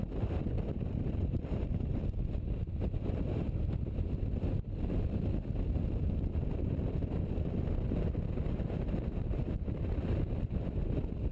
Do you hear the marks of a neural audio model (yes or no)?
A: yes